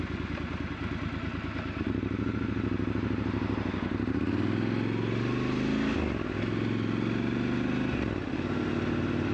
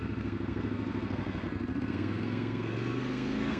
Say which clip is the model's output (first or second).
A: second